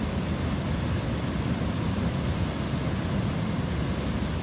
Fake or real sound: fake